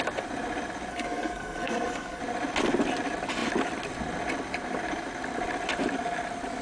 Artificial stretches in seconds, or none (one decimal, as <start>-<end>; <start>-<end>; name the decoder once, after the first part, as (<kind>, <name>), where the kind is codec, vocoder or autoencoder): 0.9-2.2 (codec, SNAC)